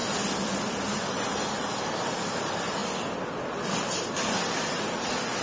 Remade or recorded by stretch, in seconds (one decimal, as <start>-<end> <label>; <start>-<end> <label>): 0.0-5.4 recorded